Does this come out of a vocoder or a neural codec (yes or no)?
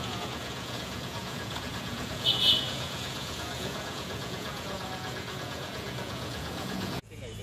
yes